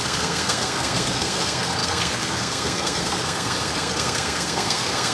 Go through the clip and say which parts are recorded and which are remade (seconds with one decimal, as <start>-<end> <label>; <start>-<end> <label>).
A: 0.0-5.1 remade